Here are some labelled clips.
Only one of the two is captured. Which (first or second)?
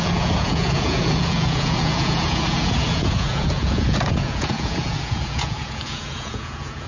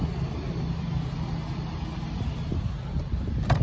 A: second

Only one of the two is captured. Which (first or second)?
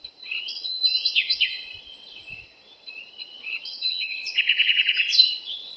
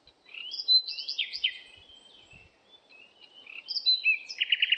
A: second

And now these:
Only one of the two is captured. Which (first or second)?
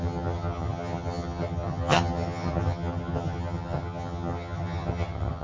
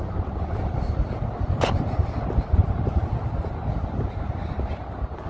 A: second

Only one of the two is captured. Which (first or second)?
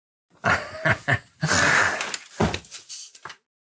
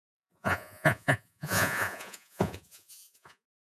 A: first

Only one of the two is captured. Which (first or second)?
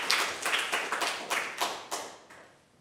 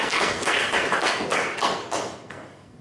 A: first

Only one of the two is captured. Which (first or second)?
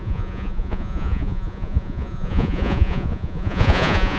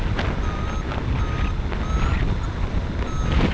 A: second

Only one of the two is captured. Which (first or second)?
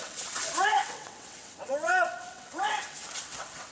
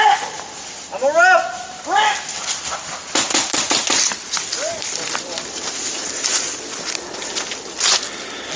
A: second